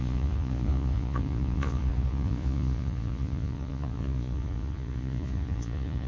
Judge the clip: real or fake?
fake